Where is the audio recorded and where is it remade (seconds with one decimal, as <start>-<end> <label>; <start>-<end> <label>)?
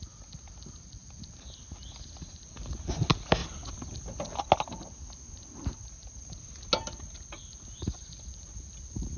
0.0-1.0 recorded; 1.0-1.6 remade; 1.6-3.4 recorded; 3.4-4.4 remade; 4.4-9.2 recorded